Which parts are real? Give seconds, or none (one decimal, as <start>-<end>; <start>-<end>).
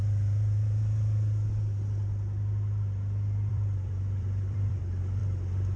0.0-3.5; 5.2-5.8